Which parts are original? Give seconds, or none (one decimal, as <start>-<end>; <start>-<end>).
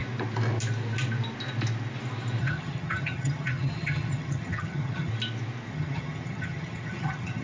0.0-2.4; 5.1-5.7